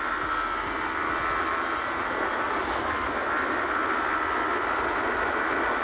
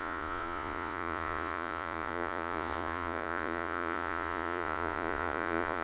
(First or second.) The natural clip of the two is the first